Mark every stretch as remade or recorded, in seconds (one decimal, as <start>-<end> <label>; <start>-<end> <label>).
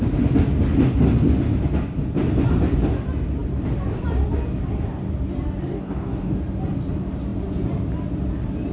0.0-5.7 recorded; 5.7-6.4 remade; 6.4-8.7 recorded